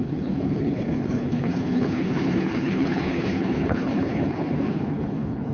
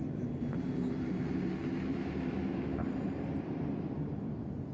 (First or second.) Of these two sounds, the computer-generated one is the first